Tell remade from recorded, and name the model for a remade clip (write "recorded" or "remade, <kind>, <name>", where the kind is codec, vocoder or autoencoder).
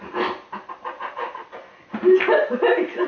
recorded